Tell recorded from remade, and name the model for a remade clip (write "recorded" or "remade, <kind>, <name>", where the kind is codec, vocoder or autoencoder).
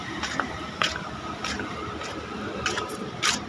remade, vocoder, BigVGAN v2